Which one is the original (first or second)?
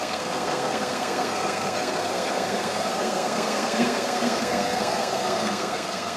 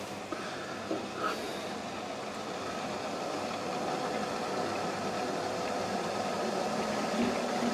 second